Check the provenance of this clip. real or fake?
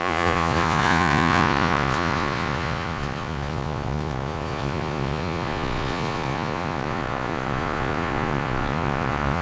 fake